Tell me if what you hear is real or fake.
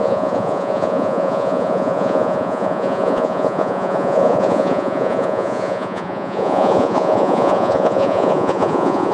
fake